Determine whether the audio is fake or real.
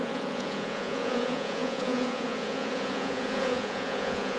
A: fake